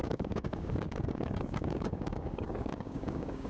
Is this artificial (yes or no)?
yes